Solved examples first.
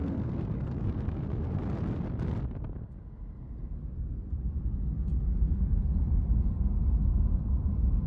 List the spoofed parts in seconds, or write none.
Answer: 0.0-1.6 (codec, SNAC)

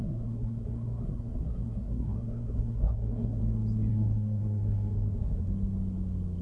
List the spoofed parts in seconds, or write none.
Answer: 0.0-3.4 (codec, SNAC); 3.9-5.5

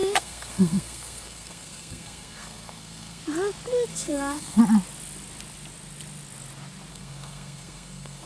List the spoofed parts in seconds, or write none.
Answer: 0.0-3.2 (codec, SNAC); 3.9-4.6; 6.9-8.3

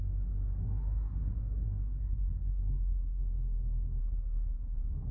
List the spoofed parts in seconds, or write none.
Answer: 0.6-3.2 (codec, SNAC); 4.0-5.1

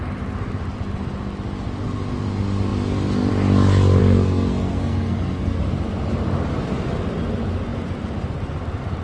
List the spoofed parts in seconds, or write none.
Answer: 4.0-5.6 (codec, SNAC)

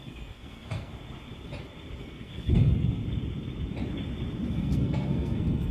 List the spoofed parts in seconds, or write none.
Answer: 0.0-0.9 (codec, SNAC); 2.0-3.0; 4.5-5.7